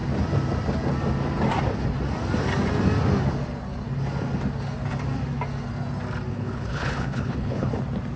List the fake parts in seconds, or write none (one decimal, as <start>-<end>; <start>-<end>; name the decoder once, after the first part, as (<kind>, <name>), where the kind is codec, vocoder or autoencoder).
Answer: 6.3-7.7 (codec, HILCodec)